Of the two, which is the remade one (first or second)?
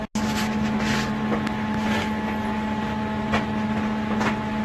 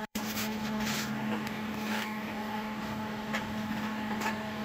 second